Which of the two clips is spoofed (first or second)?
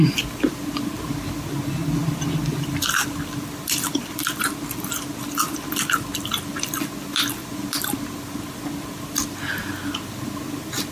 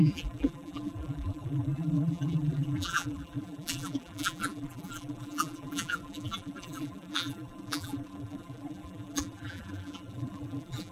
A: second